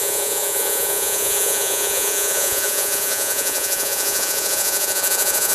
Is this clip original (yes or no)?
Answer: no